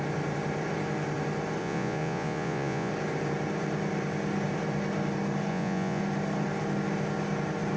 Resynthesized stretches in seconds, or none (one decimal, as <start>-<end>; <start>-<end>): 1.6-2.9; 5.5-6.0